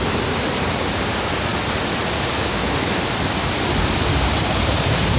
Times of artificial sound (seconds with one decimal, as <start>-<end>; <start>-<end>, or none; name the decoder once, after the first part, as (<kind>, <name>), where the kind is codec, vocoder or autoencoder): none